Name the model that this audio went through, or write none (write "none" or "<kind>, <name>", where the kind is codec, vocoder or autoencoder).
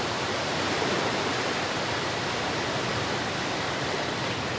none